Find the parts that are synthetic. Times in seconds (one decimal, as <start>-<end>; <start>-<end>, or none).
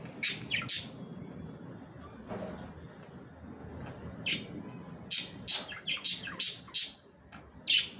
none